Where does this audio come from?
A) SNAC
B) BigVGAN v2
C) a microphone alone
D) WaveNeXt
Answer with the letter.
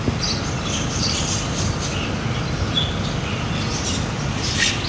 C